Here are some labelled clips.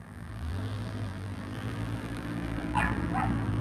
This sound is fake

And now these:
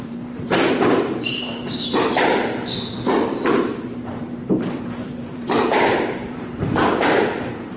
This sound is fake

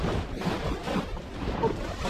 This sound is fake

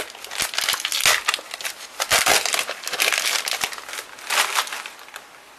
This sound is real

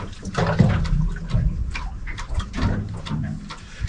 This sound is real